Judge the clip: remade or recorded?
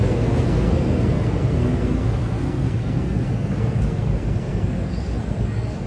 remade